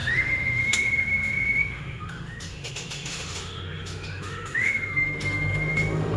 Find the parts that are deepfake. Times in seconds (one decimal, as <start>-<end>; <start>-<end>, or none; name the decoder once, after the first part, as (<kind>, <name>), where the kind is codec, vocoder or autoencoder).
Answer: 0.0-6.2 (autoencoder, DAC-VAE)